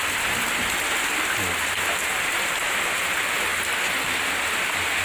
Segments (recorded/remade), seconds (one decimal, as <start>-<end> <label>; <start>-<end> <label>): 0.0-5.0 recorded